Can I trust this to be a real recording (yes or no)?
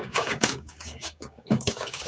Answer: no